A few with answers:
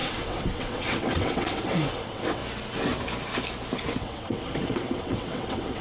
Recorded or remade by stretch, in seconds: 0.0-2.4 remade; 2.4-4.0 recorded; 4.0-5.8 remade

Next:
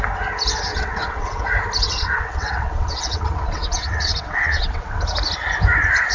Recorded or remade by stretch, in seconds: 0.0-0.7 recorded; 0.7-1.4 remade; 1.4-1.8 recorded; 1.8-5.0 remade; 5.0-6.1 recorded

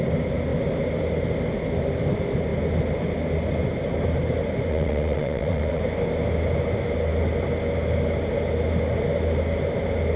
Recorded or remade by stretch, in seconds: 0.0-4.7 recorded; 4.7-5.8 remade; 5.8-10.2 recorded

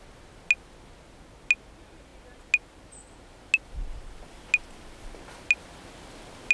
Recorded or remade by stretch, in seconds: 0.0-6.5 recorded

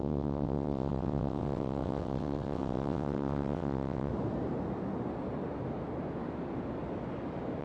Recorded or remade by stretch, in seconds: 0.0-4.1 remade; 4.1-7.6 recorded

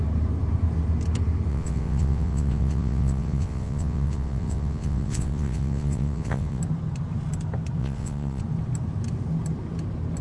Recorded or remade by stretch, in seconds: 0.0-1.5 recorded; 1.5-6.6 remade; 6.6-7.8 recorded; 7.8-8.4 remade; 8.4-10.2 recorded